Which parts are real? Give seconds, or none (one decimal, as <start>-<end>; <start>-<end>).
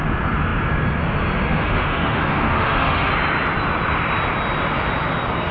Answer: 0.0-1.6; 3.1-5.5